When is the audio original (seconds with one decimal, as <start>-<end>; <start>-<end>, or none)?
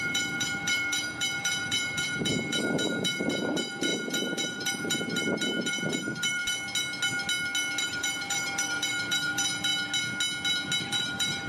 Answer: 6.4-7.8; 9.7-10.8